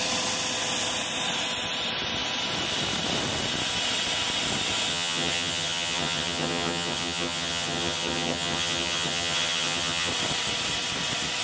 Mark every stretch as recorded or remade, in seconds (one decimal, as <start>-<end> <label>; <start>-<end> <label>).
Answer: 0.0-4.9 recorded; 4.9-10.1 remade; 10.1-11.4 recorded

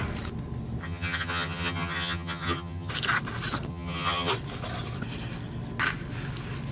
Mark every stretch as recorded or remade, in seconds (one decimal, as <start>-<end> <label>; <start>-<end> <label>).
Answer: 0.0-0.8 recorded; 0.8-2.9 remade; 2.9-3.7 recorded; 3.7-4.3 remade; 4.3-6.7 recorded

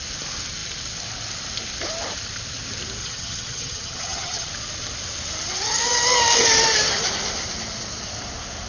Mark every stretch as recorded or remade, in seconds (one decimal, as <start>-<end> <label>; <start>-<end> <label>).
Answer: 0.0-3.0 recorded; 3.0-4.5 remade; 4.5-8.7 recorded

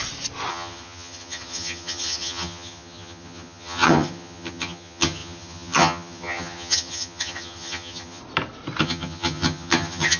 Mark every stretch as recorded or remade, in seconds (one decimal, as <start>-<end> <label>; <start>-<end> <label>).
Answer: 0.0-0.5 recorded; 0.5-8.2 remade; 8.2-8.8 recorded; 8.8-10.2 remade

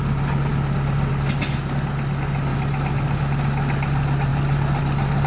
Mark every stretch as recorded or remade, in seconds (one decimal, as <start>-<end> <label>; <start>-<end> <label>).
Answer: 0.0-5.3 recorded